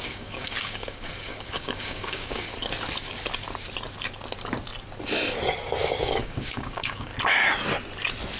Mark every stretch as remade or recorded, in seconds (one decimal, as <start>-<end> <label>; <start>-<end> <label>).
0.0-2.5 remade; 2.5-5.8 recorded; 5.8-7.1 remade; 7.1-8.4 recorded